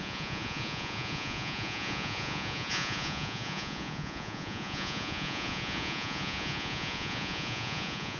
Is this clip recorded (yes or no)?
no